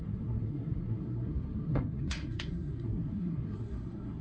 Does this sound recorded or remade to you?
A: remade